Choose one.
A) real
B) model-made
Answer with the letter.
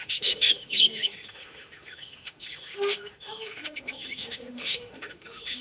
B